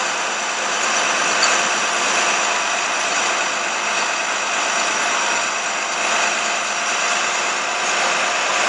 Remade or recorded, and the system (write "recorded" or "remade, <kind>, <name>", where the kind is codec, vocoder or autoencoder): recorded